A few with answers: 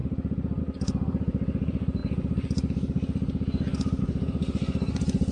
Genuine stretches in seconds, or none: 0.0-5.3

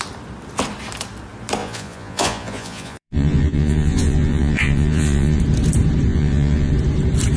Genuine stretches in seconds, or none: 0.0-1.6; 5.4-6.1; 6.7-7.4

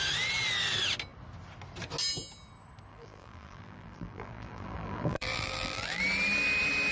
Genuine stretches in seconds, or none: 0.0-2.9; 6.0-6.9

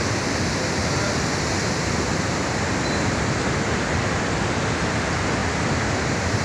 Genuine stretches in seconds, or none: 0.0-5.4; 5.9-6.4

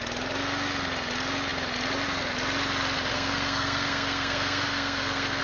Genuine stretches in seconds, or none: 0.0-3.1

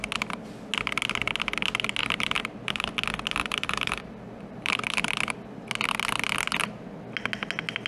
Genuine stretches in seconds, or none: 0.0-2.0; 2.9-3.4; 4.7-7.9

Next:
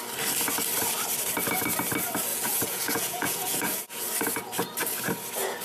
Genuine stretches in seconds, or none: 0.0-2.3; 4.0-5.6